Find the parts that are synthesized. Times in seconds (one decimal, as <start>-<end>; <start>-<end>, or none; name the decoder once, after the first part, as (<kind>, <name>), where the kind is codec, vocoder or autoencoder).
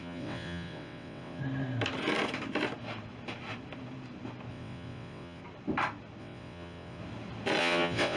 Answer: 0.0-1.4 (vocoder, WaveNeXt); 4.5-5.4; 6.2-7.0; 7.6-8.2